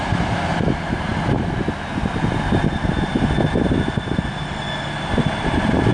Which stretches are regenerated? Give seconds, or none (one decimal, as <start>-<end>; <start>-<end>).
none